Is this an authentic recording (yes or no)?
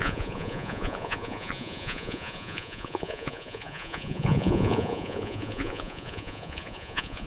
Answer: no